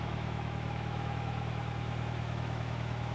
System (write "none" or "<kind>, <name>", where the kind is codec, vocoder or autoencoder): autoencoder, DAC-VAE